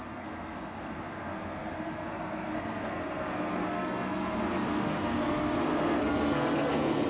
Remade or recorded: remade